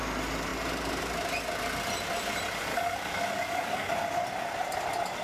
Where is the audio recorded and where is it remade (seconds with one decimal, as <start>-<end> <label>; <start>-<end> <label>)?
0.0-2.7 recorded; 2.7-3.9 remade; 3.9-5.2 recorded